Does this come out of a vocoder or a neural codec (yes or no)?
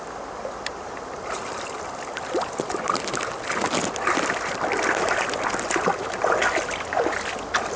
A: no